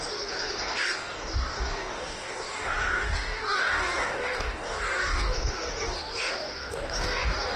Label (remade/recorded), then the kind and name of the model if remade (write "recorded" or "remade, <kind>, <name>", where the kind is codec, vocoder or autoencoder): remade, codec, DAC